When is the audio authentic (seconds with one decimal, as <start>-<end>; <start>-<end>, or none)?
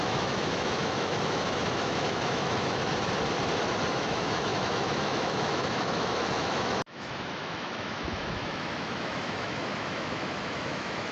2.9-3.9